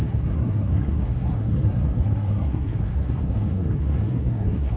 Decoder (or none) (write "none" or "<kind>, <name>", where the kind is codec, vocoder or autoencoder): codec, SNAC